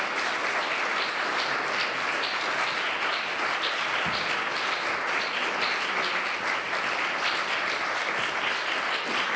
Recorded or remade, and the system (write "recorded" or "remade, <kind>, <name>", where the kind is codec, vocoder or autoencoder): recorded